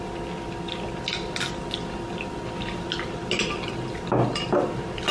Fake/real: real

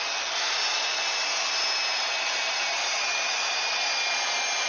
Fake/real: real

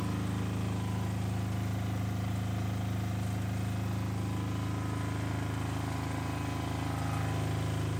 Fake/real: real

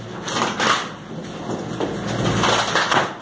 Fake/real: real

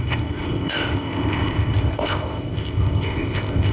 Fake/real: fake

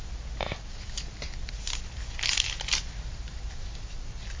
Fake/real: real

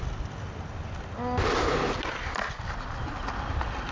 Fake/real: real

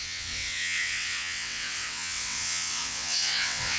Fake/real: fake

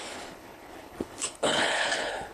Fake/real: fake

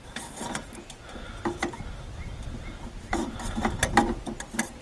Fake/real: real